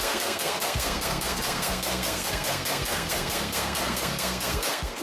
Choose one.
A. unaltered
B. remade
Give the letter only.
B